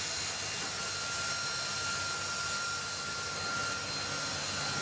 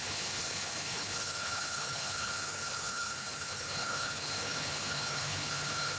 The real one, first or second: first